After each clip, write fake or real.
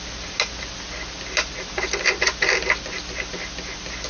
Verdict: real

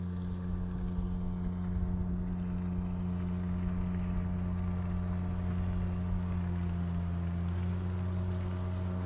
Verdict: real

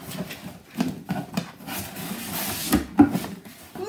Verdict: real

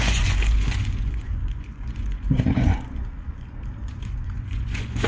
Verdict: fake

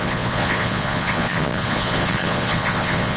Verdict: fake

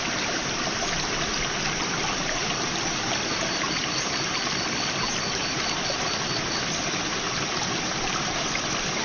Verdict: real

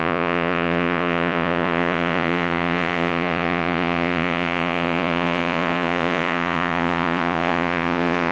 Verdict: fake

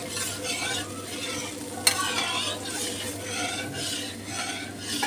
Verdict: real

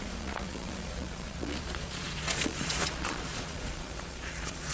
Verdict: fake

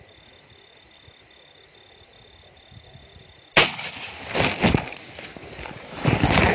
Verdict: real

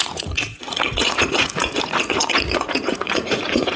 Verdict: fake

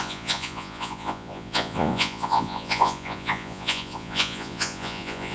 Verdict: fake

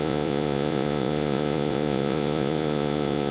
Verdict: fake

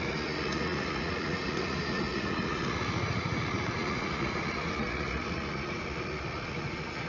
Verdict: fake